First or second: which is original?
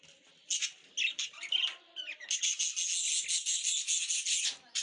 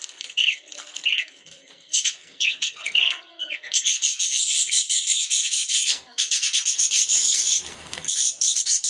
first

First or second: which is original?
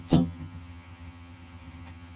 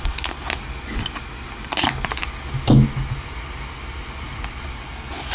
second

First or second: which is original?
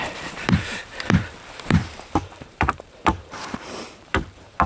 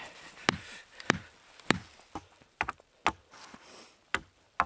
second